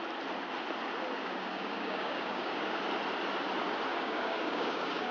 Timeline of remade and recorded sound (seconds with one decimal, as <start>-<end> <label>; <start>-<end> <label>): 0.0-1.2 recorded; 1.2-2.8 remade; 2.8-3.9 recorded; 3.9-5.1 remade

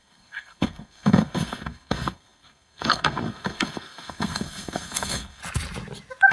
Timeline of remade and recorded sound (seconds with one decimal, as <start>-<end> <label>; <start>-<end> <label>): 0.0-5.4 remade; 5.4-6.3 recorded

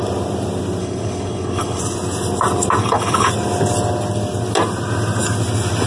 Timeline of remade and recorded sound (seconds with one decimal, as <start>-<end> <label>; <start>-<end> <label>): 0.0-0.8 recorded; 0.8-1.8 remade; 1.8-2.8 recorded; 2.8-3.3 remade; 3.3-5.9 recorded